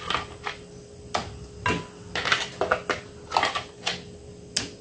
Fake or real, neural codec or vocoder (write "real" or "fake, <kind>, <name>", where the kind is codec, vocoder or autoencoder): real